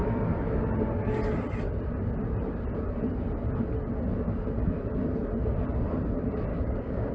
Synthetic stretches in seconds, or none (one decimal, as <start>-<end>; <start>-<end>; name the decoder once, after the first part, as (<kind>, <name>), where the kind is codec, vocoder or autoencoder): 6.5-7.1 (codec, DAC)